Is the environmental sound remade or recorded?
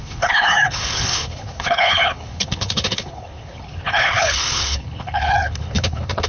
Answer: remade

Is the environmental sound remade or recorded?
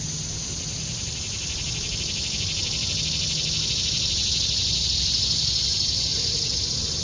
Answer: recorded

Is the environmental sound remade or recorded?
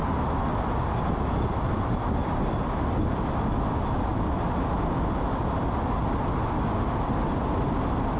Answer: recorded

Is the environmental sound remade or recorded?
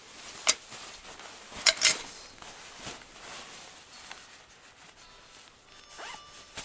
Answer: recorded